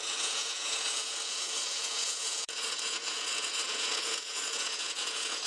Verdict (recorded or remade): remade